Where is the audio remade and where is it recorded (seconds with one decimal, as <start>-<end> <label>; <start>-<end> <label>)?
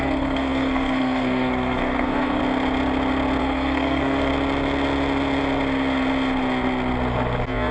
0.0-2.4 remade; 2.4-3.4 recorded; 3.4-4.3 remade; 4.3-7.7 recorded